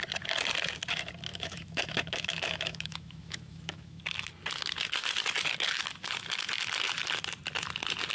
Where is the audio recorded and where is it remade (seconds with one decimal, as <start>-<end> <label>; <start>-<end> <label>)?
0.0-1.3 recorded; 1.3-4.0 remade; 4.0-8.1 recorded